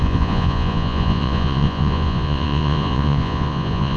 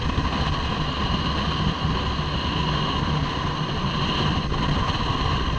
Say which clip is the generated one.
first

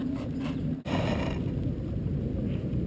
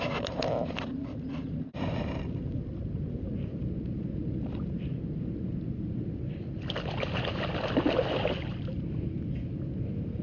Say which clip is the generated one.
second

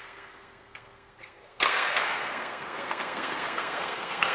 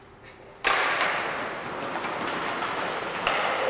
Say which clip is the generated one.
first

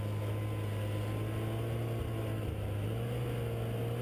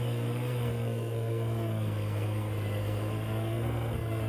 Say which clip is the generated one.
second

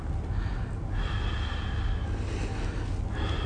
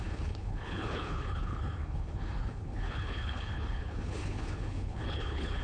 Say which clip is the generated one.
second